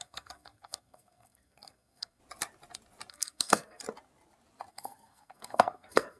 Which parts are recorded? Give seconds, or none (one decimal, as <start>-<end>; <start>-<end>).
2.2-3.1; 3.8-4.7